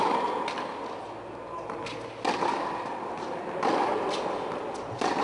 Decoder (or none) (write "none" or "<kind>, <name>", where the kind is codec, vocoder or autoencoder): none